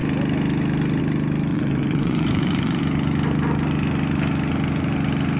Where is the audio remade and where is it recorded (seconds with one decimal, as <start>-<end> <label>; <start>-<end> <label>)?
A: 0.0-1.5 recorded; 1.5-2.8 remade; 2.8-5.4 recorded